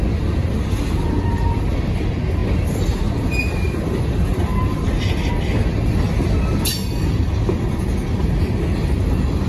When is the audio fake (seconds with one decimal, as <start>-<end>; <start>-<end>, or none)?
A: none